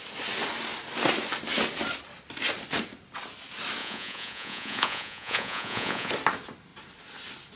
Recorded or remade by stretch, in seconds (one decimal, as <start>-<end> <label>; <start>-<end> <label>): 0.0-3.8 recorded; 3.8-6.1 remade; 6.1-7.6 recorded